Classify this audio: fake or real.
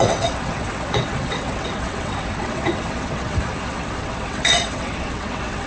fake